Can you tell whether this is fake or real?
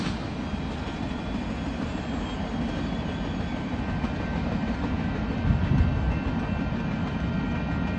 real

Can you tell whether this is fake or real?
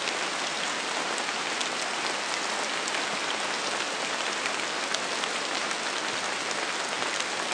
real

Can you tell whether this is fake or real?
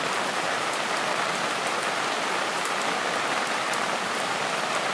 real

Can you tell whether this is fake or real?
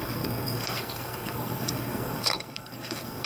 fake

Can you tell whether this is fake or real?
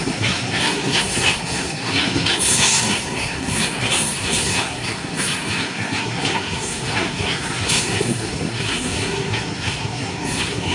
fake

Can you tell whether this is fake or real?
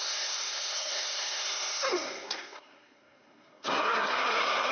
fake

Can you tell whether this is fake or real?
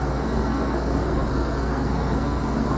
fake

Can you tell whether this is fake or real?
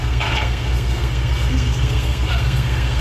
fake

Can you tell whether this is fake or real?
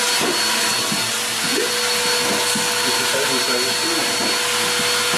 real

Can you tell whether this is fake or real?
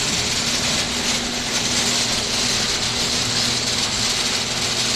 real